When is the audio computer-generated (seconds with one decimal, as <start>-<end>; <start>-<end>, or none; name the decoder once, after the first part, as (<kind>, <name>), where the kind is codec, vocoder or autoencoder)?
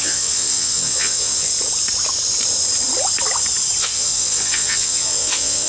0.0-1.5 (vocoder, WaveNeXt); 3.8-5.7